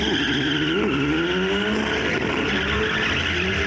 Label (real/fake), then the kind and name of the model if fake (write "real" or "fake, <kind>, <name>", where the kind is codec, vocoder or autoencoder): real